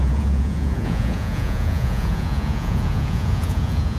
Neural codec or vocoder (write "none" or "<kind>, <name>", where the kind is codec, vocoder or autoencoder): vocoder, Vocos